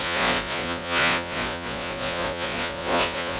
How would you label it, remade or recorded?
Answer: remade